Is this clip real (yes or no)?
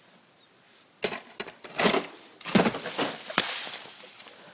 yes